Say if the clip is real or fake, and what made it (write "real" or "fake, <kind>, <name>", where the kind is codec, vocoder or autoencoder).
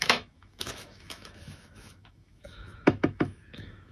fake, autoencoder, DAC-VAE